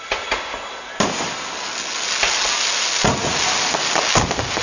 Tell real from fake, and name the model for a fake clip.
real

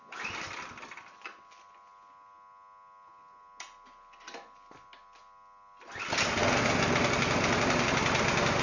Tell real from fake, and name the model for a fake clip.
real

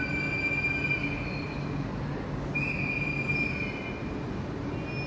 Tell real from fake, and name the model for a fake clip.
real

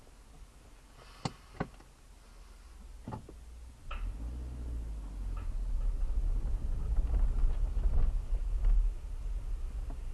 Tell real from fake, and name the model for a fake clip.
real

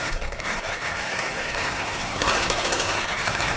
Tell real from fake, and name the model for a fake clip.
fake, codec, SNAC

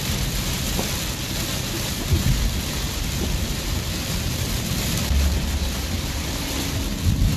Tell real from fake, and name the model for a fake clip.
fake, vocoder, BigVGAN v2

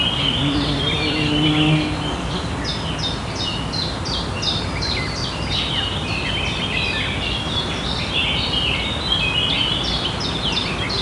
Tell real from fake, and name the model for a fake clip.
real